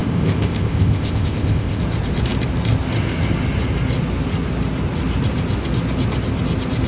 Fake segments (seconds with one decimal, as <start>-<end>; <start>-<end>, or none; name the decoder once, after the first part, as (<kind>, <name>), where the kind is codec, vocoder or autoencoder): 0.0-1.8 (codec, ZipCodec)